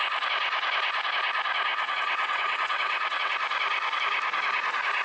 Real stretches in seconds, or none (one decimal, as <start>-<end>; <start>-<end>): 0.0-1.7; 3.3-5.0